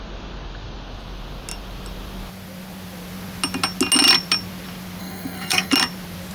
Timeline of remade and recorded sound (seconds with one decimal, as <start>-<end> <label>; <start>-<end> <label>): 0.0-5.0 recorded; 5.0-5.7 remade; 5.7-6.3 recorded